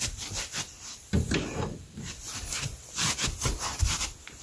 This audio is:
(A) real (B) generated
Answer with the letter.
B